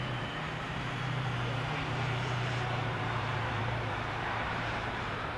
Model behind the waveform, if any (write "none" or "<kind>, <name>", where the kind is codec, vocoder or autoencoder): vocoder, BigVGAN v2